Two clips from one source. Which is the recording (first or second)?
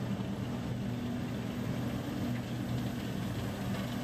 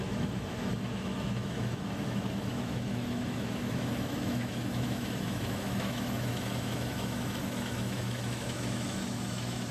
first